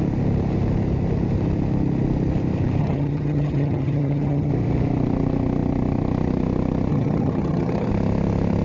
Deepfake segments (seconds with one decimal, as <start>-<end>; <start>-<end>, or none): 2.8-4.5; 6.9-7.9